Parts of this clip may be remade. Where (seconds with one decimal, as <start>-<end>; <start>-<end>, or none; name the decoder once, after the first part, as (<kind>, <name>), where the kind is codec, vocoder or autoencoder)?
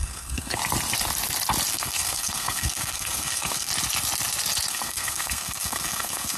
0.0-0.6 (codec, SNAC); 1.7-3.7; 4.7-6.4